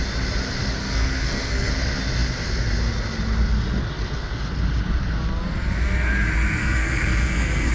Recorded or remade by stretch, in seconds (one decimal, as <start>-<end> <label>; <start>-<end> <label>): 0.0-0.8 recorded; 0.8-1.7 remade; 1.7-6.6 recorded; 6.6-7.7 remade